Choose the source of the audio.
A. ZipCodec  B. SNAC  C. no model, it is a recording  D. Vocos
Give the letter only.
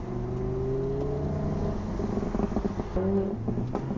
C